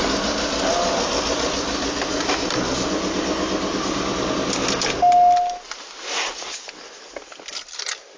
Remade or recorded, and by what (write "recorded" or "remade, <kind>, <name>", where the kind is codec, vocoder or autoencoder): recorded